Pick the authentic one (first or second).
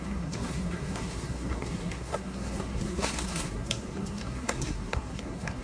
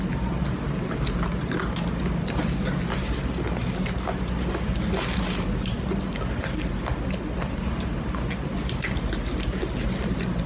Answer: second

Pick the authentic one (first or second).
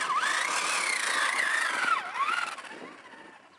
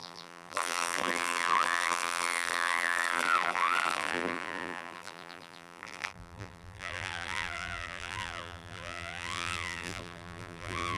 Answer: first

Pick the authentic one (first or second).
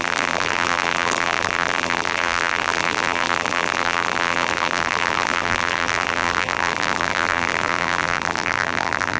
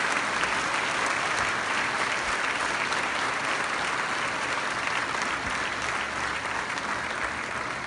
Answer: second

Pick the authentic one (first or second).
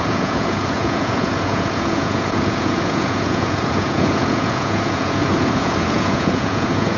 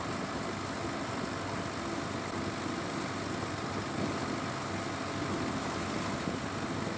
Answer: second